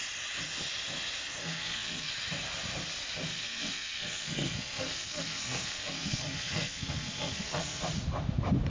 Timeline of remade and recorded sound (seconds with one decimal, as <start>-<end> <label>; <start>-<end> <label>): 0.0-1.4 recorded; 1.4-2.1 remade; 2.1-3.3 recorded; 3.3-7.8 remade; 7.8-8.7 recorded